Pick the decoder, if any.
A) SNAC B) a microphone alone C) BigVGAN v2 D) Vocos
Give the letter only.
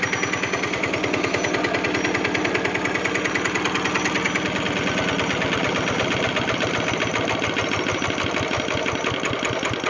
B